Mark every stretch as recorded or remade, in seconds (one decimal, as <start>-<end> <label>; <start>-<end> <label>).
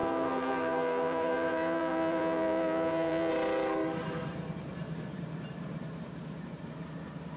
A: 0.0-3.3 remade; 3.3-7.4 recorded